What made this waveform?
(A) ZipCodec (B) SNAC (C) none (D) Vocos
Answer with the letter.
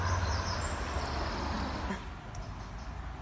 C